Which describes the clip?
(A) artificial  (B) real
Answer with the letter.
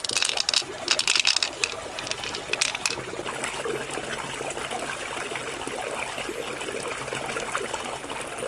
B